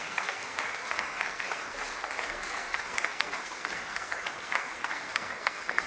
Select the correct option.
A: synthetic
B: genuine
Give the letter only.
A